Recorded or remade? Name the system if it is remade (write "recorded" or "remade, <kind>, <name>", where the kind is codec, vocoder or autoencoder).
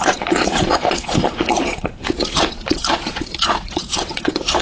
remade, vocoder, Vocos